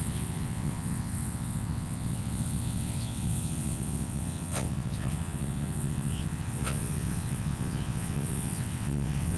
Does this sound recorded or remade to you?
remade